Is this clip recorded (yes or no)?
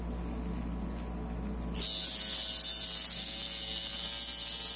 yes